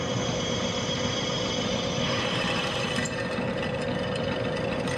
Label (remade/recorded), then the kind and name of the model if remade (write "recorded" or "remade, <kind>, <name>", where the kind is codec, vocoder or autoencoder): recorded